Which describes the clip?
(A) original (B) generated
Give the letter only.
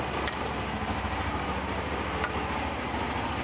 A